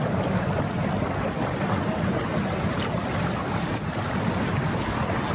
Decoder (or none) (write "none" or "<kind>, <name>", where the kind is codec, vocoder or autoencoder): none